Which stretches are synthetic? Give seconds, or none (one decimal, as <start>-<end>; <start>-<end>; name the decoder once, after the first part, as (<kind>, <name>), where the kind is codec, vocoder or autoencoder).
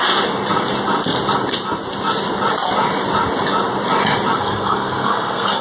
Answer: 4.4-5.6 (codec, SNAC)